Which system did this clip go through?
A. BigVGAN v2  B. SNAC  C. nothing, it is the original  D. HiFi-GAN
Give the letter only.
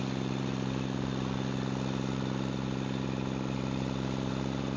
C